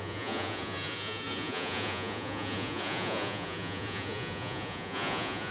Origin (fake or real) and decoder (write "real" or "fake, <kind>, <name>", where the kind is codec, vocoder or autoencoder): fake, vocoder, Vocos